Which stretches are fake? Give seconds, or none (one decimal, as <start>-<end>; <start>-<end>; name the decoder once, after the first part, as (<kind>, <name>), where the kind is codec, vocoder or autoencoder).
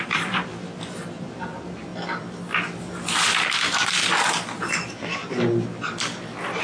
0.0-0.5 (vocoder, BigVGAN v2); 1.1-1.9; 3.4-4.0; 4.6-5.2